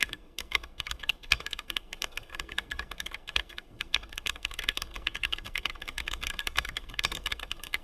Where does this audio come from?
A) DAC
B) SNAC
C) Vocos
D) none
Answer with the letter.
B